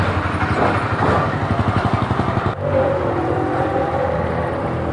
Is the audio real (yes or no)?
yes